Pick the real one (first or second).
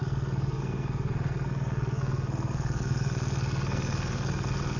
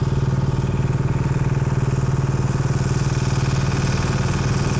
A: second